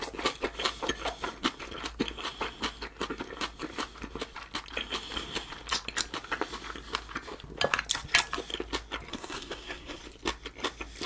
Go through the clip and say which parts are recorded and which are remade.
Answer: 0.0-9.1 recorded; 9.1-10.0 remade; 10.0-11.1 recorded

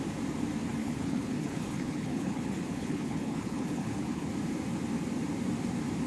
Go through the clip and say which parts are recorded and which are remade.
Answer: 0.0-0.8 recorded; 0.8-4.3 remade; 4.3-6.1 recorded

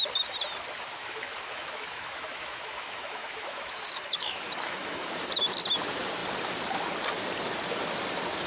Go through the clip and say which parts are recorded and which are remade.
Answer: 0.0-1.0 recorded; 1.0-5.2 remade; 5.2-8.5 recorded

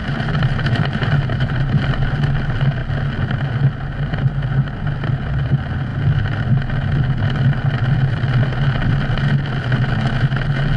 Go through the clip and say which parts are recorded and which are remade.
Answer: 0.0-2.1 remade; 2.1-10.8 recorded

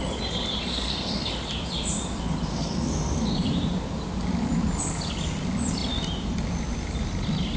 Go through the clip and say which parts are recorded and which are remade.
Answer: 0.0-0.7 recorded; 0.7-1.3 remade; 1.3-2.5 recorded; 2.5-3.3 remade; 3.3-7.6 recorded

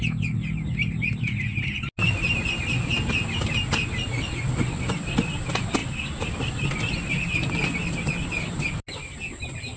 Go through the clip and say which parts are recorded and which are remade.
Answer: 0.0-9.8 recorded